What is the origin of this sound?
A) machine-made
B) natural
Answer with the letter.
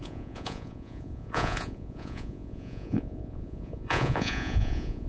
A